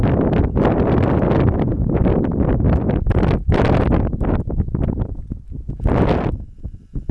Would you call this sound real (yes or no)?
yes